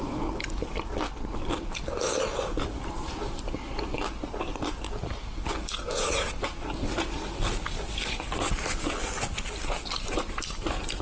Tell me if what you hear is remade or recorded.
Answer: recorded